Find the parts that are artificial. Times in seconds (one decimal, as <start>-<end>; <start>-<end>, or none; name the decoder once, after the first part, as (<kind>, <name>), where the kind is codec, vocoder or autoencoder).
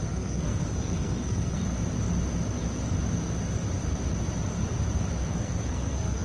0.0-1.6 (codec, SNAC); 5.3-6.2